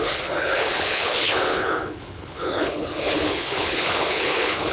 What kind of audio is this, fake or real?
fake